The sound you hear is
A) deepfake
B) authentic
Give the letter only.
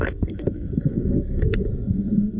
A